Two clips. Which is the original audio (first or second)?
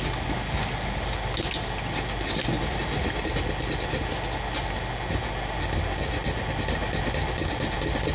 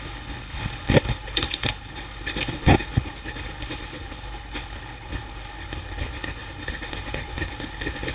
first